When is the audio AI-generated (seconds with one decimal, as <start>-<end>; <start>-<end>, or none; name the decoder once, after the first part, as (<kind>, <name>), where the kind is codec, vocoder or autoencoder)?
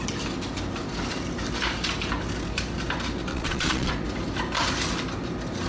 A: 3.3-3.9 (vocoder, Vocos)